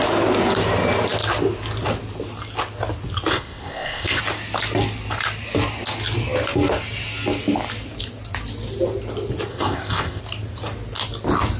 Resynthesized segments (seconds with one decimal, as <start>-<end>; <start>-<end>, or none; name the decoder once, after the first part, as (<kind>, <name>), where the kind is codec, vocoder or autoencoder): 3.3-4.2 (codec, ZipCodec); 9.5-10.2